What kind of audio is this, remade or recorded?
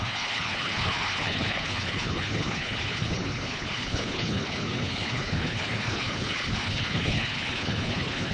remade